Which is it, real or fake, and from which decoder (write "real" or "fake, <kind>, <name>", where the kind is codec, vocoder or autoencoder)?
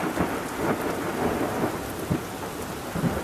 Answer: real